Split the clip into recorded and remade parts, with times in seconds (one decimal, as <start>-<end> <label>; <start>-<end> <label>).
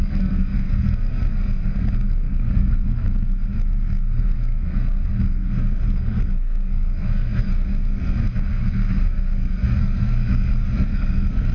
0.0-11.5 remade